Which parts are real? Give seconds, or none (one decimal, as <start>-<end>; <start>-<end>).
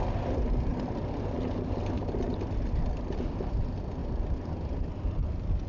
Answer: 0.0-0.7; 3.5-4.0; 5.3-5.7